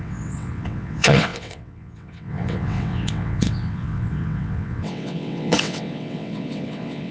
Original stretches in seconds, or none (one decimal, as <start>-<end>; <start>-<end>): none